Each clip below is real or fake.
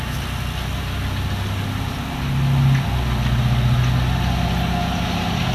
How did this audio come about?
real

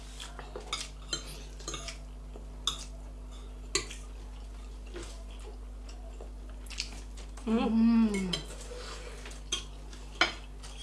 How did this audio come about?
real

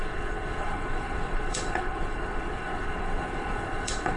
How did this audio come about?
fake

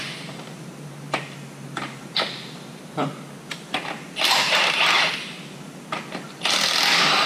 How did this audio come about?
real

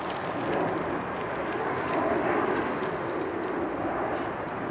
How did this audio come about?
real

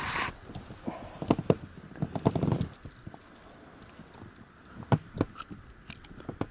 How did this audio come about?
real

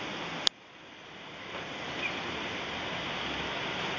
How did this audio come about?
real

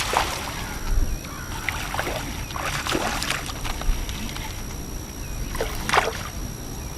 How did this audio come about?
real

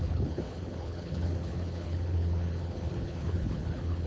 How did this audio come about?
fake